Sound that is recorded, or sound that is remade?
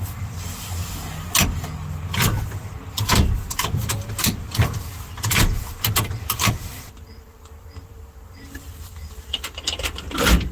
remade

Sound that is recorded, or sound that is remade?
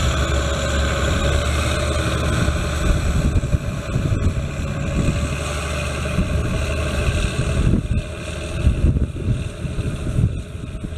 recorded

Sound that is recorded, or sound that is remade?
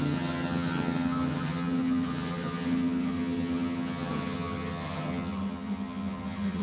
remade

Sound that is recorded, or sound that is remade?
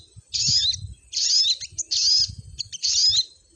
recorded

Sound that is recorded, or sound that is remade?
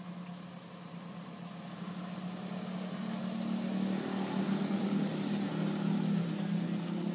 recorded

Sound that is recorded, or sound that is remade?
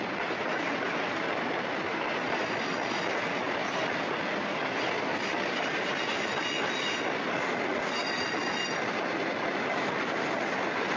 recorded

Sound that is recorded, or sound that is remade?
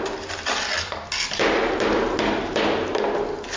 recorded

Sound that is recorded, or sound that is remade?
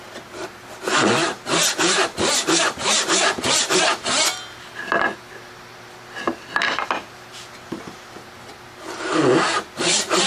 recorded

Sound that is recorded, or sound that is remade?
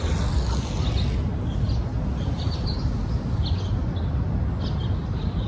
recorded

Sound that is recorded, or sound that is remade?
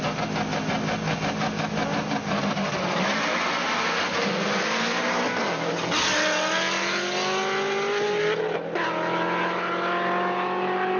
recorded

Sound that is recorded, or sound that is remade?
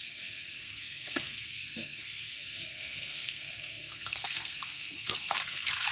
remade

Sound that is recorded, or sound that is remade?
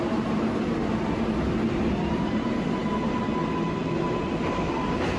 recorded